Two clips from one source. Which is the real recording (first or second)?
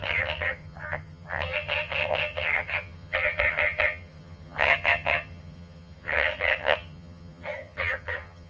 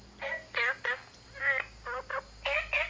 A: second